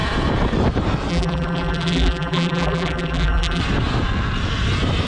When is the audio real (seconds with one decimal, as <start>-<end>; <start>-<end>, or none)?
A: 0.0-1.1; 3.6-5.1